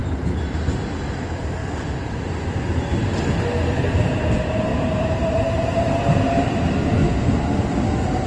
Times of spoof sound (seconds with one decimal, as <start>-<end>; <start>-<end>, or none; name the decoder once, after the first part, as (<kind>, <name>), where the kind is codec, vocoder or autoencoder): 1.2-1.6 (vocoder, BigVGAN v2); 3.7-7.0; 7.9-8.3